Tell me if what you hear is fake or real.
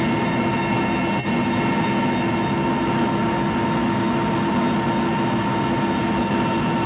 real